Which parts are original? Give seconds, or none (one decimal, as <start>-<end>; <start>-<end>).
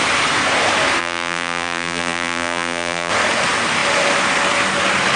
0.0-1.0; 3.1-5.2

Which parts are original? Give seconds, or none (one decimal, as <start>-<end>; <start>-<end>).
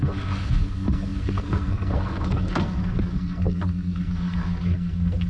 none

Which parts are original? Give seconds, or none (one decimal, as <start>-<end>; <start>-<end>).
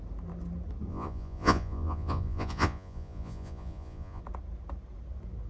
0.0-0.9; 4.2-5.5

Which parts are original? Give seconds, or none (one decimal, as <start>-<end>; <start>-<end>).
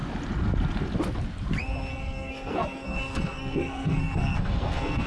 0.0-1.9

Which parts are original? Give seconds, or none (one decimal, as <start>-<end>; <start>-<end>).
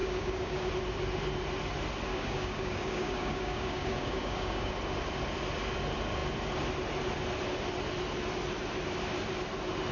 0.7-2.1; 4.7-9.9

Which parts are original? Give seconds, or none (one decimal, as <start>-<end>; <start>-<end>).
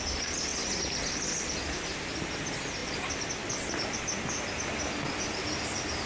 0.0-6.1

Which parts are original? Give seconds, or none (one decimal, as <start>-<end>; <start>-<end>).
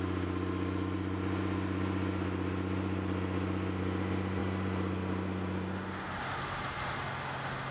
0.0-7.7